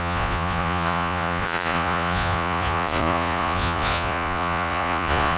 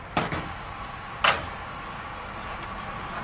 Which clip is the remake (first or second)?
first